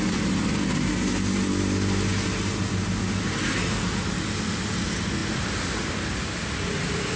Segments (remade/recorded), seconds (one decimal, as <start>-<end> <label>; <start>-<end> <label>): 0.0-7.2 recorded